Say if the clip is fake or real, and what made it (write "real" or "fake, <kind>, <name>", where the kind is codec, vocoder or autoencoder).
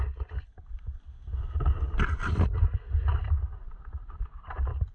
fake, vocoder, BigVGAN v2